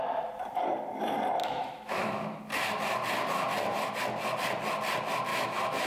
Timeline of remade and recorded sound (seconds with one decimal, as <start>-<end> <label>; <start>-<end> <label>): 0.0-1.4 recorded; 1.4-2.4 remade; 2.4-5.3 recorded; 5.3-5.9 remade